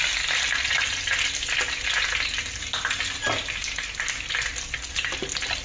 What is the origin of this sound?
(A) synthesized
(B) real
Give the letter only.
B